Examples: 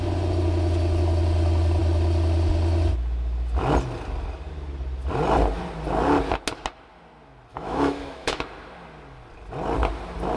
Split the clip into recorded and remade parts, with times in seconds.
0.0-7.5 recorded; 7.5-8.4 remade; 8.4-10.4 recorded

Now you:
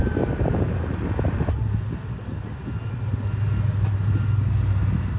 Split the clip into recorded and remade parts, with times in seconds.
0.0-5.2 recorded

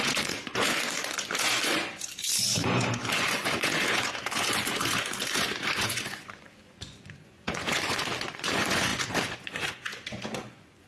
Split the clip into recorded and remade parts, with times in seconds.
0.0-10.9 remade

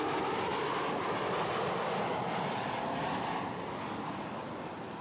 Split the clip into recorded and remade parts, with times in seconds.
0.0-5.0 recorded